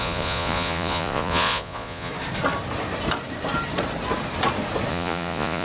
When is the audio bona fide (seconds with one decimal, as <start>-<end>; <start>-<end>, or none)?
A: 2.1-4.9